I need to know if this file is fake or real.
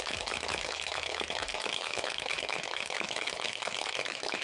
fake